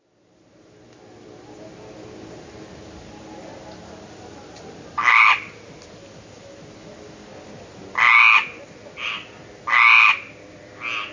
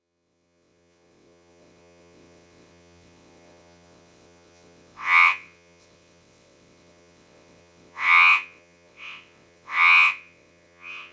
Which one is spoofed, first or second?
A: second